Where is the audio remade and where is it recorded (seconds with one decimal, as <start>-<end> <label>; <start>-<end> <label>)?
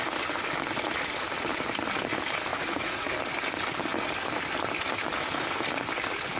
0.0-2.5 recorded; 2.5-3.1 remade; 3.1-6.4 recorded